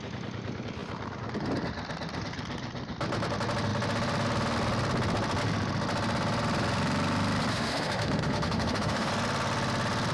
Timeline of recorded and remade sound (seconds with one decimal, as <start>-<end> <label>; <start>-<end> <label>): 0.0-7.5 recorded; 7.5-9.1 remade; 9.1-10.1 recorded

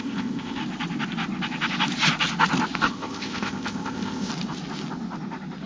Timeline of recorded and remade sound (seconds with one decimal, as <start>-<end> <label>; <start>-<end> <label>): 0.0-0.6 remade; 0.6-2.9 recorded; 2.9-4.3 remade; 4.3-5.7 recorded

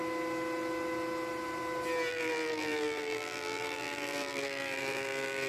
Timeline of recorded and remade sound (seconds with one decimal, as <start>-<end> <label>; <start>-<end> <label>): 0.0-2.1 recorded; 2.1-5.5 remade

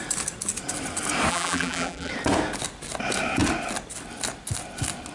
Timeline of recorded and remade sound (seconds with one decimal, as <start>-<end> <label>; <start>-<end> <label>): 0.0-1.3 recorded; 1.3-2.1 remade; 2.1-5.1 recorded